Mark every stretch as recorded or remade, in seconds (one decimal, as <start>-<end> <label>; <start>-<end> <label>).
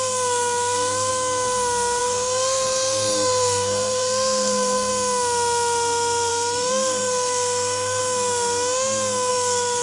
0.0-1.1 remade; 1.1-2.0 recorded; 2.0-4.9 remade; 4.9-6.3 recorded; 6.3-8.0 remade; 8.0-9.3 recorded; 9.3-9.8 remade